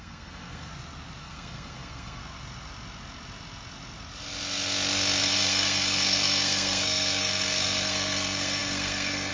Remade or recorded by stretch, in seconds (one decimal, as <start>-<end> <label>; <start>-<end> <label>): 0.0-0.7 remade; 0.7-1.2 recorded; 1.2-2.2 remade; 2.2-5.2 recorded; 5.2-9.3 remade